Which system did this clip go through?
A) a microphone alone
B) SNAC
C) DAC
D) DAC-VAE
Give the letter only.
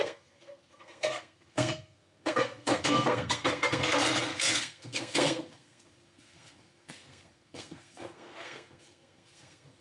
B